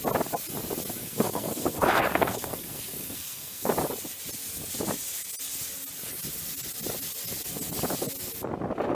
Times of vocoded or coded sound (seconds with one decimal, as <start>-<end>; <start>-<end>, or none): 1.0-3.7